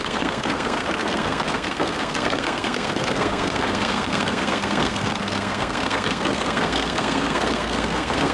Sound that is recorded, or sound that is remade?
remade